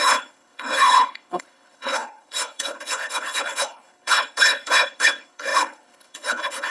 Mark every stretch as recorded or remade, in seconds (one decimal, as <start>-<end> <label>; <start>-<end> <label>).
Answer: 0.0-6.7 remade